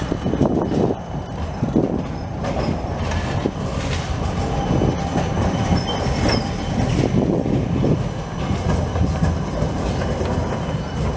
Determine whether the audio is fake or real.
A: real